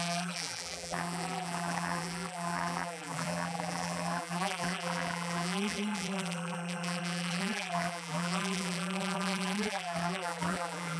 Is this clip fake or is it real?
fake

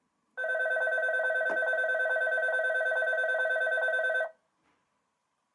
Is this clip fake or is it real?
real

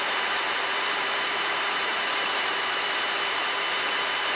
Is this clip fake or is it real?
fake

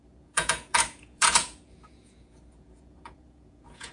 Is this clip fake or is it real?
fake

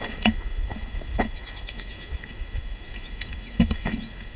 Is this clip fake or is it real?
fake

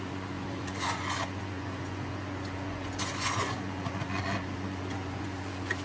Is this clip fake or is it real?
fake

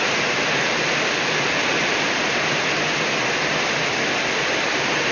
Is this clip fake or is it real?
real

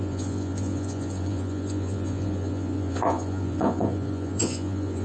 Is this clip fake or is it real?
fake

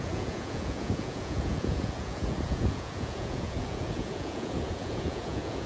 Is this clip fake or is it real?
fake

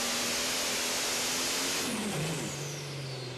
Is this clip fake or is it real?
real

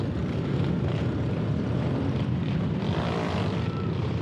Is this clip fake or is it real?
fake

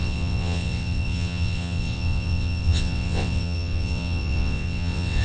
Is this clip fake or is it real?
fake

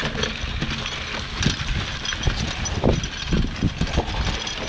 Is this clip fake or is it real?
real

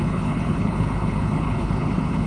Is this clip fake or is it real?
fake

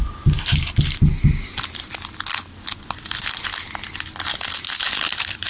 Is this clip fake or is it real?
real